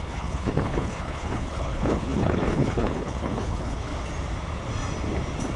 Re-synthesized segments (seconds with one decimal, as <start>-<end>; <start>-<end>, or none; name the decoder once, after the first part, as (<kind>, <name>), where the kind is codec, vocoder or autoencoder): 0.0-3.9 (codec, HILCodec)